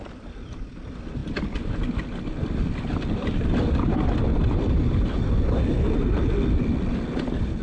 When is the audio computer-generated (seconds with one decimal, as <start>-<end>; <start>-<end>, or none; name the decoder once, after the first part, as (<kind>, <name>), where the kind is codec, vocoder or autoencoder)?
0.0-4.3 (vocoder, BigVGAN v2); 6.9-7.6